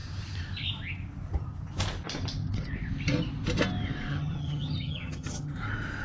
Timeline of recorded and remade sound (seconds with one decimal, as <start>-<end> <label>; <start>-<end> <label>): 0.0-4.1 recorded; 4.1-5.6 remade; 5.6-6.0 recorded